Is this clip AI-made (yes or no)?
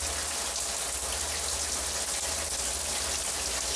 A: no